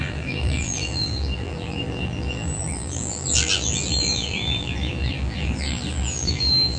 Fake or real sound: fake